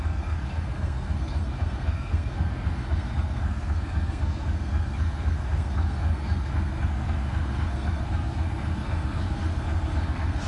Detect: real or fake fake